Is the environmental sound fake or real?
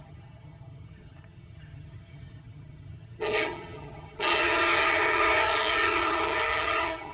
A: fake